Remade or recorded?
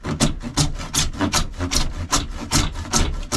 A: recorded